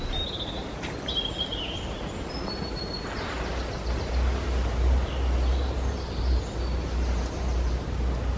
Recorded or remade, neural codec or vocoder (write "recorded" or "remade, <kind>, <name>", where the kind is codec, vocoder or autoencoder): recorded